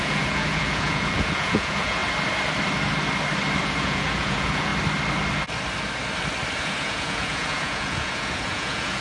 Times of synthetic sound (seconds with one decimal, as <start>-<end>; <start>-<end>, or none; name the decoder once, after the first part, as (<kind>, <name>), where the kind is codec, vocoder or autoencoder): 0.0-2.0 (vocoder, Vocos); 3.6-4.7; 6.6-9.0